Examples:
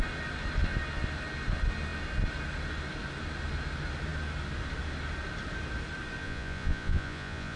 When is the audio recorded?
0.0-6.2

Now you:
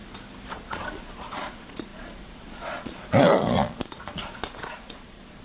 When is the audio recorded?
0.0-0.5

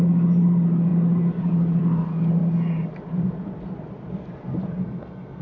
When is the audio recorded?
0.0-4.8

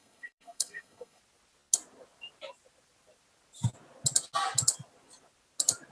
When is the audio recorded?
1.2-5.9

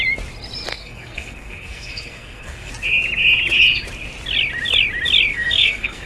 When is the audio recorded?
0.0-0.7; 2.7-5.3

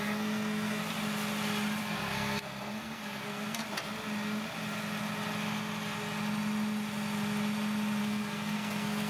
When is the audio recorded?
0.8-1.8; 3.6-8.0